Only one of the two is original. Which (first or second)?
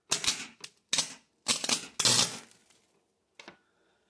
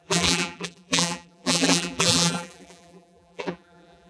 first